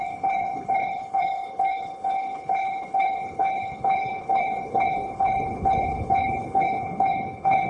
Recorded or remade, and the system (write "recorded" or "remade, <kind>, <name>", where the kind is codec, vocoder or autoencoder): remade, codec, HILCodec